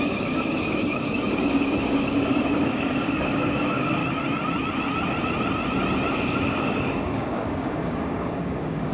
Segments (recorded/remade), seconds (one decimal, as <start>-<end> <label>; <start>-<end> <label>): 0.0-4.0 remade; 4.0-6.1 recorded; 6.1-8.9 remade